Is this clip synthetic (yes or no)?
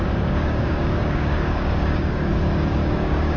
yes